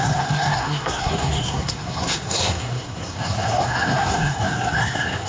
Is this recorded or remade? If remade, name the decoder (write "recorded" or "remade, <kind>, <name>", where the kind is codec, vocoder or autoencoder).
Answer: remade, codec, SNAC